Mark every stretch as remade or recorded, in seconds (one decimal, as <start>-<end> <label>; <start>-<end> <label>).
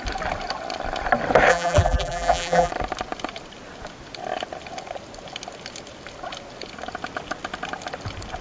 0.0-1.5 recorded; 1.5-2.7 remade; 2.7-8.4 recorded